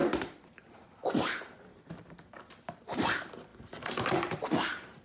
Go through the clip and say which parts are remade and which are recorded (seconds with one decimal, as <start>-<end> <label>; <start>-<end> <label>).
0.0-5.0 remade